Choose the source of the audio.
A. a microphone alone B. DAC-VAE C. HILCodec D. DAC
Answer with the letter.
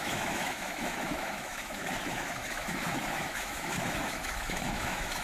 B